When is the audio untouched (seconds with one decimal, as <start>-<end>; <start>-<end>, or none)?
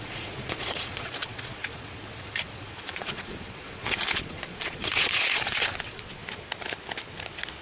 6.2-7.6